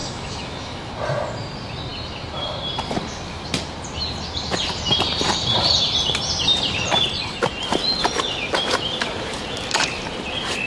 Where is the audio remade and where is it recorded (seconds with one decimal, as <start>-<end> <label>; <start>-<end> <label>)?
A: 0.0-0.9 remade; 0.9-10.7 recorded